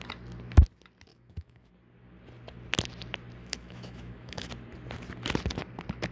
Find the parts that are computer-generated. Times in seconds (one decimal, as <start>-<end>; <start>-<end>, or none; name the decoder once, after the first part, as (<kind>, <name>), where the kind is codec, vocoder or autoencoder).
1.1-1.7 (autoencoder, DAC-VAE); 3.4-4.5